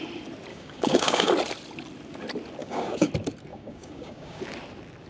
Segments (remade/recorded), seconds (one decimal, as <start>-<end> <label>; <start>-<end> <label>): 0.0-0.5 recorded; 0.5-1.3 remade; 1.3-2.6 recorded; 2.6-3.1 remade; 3.1-3.5 recorded; 3.5-4.4 remade; 4.4-5.1 recorded